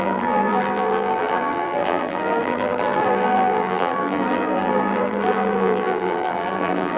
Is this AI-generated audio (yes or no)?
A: yes